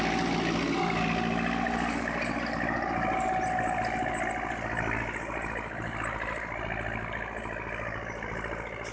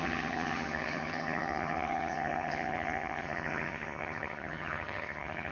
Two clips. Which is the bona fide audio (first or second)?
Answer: first